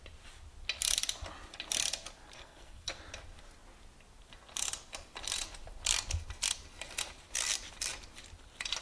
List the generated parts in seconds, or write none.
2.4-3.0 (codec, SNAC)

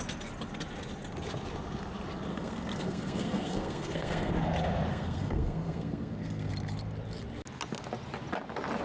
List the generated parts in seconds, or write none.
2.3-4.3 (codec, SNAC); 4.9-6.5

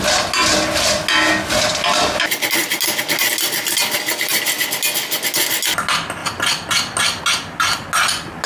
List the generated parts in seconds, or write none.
6.2-7.2 (vocoder, BigVGAN v2)

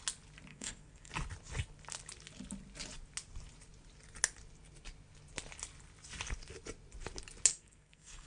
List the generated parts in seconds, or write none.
0.5-1.1 (codec, SNAC); 7.5-8.3

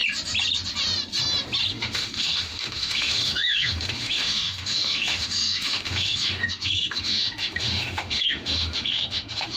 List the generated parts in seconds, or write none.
1.7-9.6 (autoencoder, DAC-VAE)